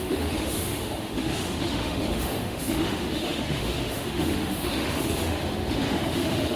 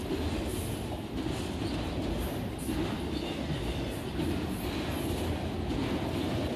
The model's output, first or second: first